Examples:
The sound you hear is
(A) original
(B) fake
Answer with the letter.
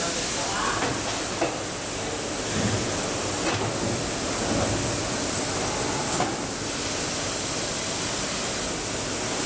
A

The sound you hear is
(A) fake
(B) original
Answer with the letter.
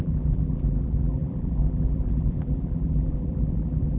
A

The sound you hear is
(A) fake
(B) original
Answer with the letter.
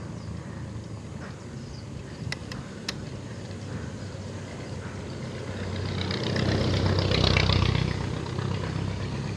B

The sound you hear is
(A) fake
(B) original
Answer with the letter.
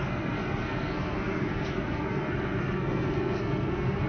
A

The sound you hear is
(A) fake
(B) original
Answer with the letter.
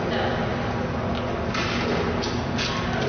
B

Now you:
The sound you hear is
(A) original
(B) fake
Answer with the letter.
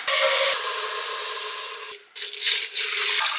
A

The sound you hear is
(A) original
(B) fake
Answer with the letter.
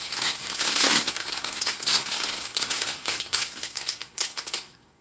B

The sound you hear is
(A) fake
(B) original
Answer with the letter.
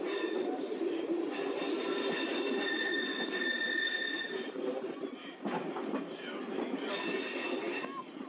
B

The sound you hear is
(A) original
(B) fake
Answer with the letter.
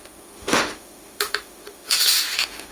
B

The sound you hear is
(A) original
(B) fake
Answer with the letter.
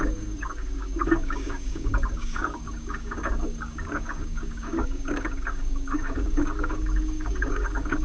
B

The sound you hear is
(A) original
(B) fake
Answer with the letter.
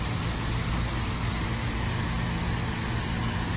A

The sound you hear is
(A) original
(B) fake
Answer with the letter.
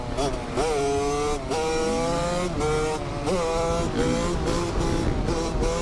A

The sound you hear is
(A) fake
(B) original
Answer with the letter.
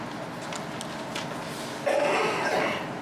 B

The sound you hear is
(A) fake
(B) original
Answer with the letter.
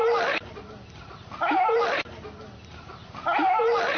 B